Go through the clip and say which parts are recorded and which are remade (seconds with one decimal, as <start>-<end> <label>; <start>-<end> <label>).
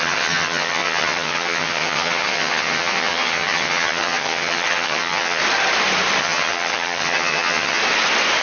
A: 0.0-5.4 remade; 5.4-6.2 recorded; 6.2-7.8 remade; 7.8-8.4 recorded